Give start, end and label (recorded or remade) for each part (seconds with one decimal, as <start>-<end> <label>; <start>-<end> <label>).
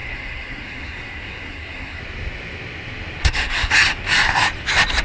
0.0-2.0 remade; 2.0-3.2 recorded; 3.2-3.7 remade; 3.7-5.0 recorded